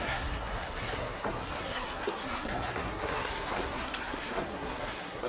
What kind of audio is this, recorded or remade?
remade